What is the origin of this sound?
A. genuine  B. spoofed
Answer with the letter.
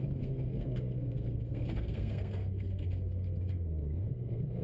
B